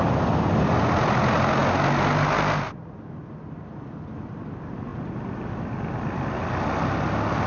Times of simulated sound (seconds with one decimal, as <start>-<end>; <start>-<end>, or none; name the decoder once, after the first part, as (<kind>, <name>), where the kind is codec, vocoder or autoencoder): none